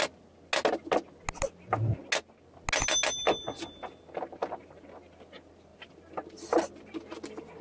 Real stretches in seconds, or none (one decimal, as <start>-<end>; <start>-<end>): 0.0-7.6